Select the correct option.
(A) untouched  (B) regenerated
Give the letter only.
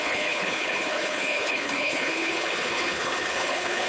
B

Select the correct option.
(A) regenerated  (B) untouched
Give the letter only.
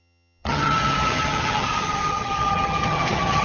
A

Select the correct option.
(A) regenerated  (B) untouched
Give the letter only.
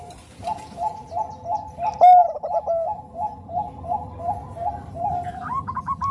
B